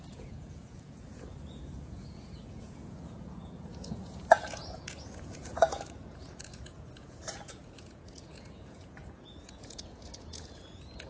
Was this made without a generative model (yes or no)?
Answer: no